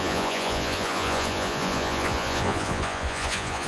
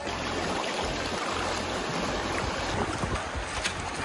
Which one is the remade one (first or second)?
first